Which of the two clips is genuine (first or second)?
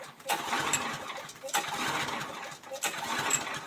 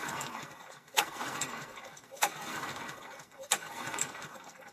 first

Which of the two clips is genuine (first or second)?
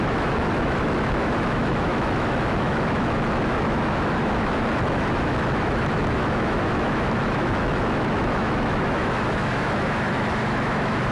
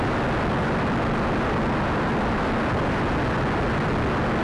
second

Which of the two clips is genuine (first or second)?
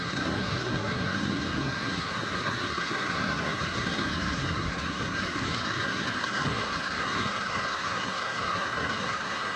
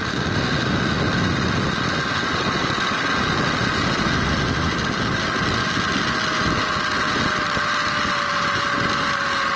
second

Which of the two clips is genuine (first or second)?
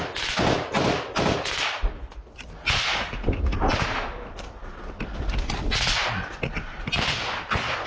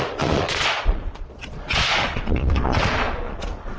first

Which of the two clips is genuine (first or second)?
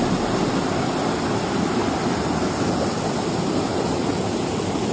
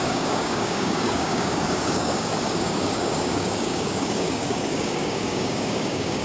first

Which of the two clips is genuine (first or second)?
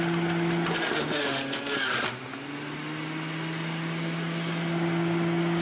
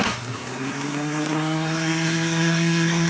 first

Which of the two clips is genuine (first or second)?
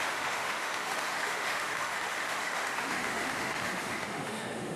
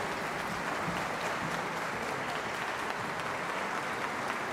second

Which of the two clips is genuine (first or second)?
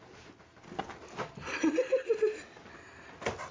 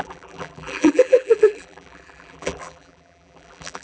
first